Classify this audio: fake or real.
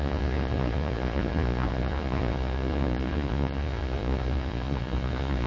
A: fake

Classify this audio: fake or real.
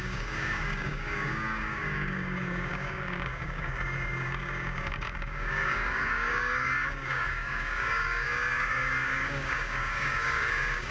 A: fake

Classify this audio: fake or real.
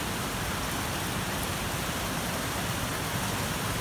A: real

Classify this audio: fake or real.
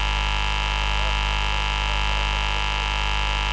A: real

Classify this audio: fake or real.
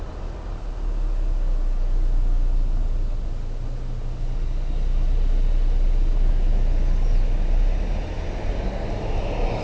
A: real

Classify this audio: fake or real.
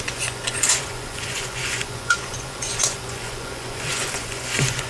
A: fake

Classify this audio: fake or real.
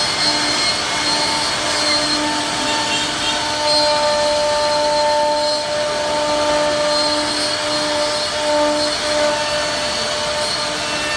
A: real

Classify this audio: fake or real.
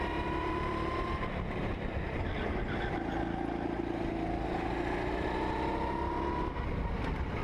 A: real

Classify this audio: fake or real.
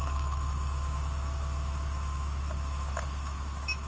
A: fake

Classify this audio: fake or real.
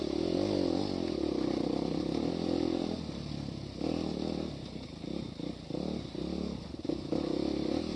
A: real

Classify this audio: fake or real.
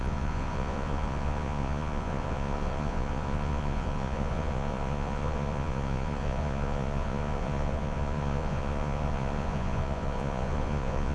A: fake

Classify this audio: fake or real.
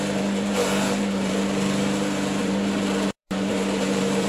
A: fake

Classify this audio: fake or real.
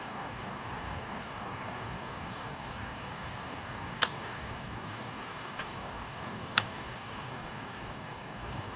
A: fake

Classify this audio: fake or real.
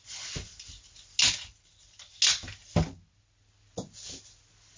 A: real